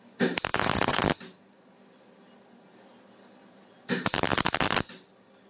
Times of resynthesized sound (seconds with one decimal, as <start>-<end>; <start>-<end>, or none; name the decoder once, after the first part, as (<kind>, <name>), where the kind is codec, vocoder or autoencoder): 0.5-1.0 (vocoder, Vocos)